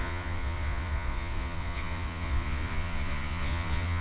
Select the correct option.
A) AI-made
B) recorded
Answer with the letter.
A